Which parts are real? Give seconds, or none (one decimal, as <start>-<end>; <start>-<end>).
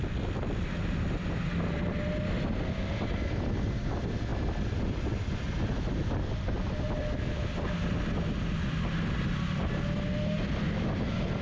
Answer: 0.0-11.4